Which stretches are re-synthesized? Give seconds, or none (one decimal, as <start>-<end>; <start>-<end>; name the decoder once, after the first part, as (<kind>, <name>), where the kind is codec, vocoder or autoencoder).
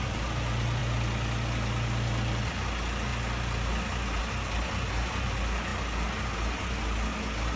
none